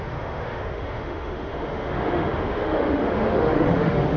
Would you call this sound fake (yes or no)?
yes